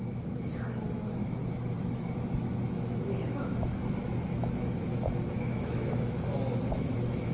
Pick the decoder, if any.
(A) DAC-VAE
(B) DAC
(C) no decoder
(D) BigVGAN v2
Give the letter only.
A